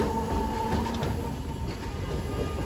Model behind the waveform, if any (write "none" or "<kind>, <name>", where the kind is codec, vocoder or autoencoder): none